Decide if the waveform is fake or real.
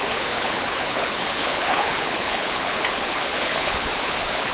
fake